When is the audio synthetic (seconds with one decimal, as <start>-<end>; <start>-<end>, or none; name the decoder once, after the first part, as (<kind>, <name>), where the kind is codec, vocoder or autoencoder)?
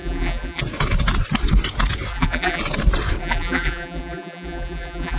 0.0-0.6 (vocoder, BigVGAN v2); 2.1-2.6; 3.2-5.2